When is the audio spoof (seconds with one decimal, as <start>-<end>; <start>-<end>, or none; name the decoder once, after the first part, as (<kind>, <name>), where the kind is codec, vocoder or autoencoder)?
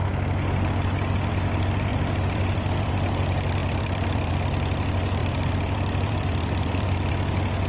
1.9-2.9 (vocoder, BigVGAN v2); 3.6-4.3; 5.2-7.1